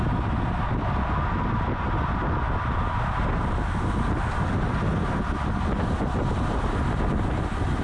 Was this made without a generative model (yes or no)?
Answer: yes